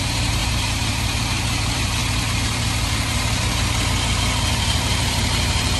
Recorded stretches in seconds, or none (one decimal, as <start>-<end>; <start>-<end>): 2.0-4.5